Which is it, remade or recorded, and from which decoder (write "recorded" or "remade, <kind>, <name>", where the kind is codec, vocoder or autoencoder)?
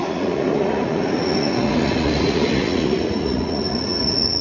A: remade, vocoder, Vocos